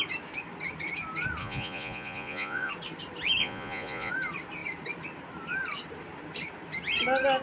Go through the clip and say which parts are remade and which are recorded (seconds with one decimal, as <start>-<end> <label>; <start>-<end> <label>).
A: 0.0-1.4 recorded; 1.4-2.7 remade; 2.7-3.4 recorded; 3.4-4.1 remade; 4.1-7.4 recorded